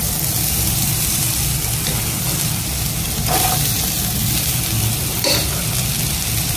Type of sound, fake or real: real